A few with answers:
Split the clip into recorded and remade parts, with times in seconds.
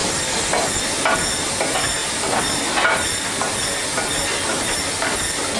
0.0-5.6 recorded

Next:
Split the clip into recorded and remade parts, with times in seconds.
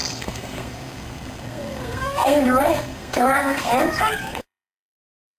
0.0-5.4 remade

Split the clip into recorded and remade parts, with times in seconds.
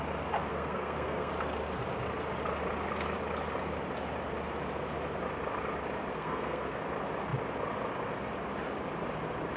0.0-0.5 recorded; 0.5-1.3 remade; 1.3-6.1 recorded; 6.1-6.8 remade; 6.8-9.6 recorded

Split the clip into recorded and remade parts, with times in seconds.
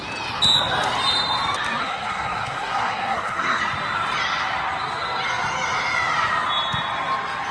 0.0-1.8 recorded; 1.8-3.6 remade; 3.6-7.5 recorded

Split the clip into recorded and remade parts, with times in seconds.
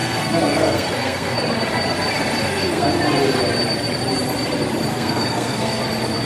0.0-1.4 remade; 1.4-2.4 recorded; 2.4-2.9 remade; 2.9-4.9 recorded; 4.9-5.8 remade; 5.8-6.2 recorded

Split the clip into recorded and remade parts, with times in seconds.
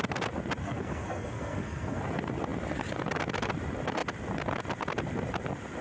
0.0-0.6 recorded; 0.6-2.0 remade; 2.0-5.8 recorded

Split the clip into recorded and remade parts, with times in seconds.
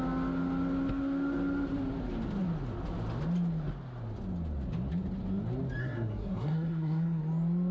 0.0-5.8 recorded; 5.8-7.2 remade; 7.2-7.7 recorded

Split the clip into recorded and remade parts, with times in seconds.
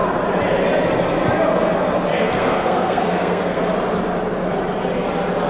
0.0-2.1 recorded; 2.1-3.6 remade; 3.6-5.5 recorded